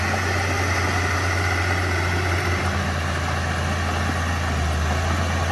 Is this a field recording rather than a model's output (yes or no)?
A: yes